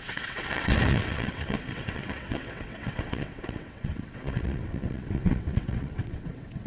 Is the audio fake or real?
fake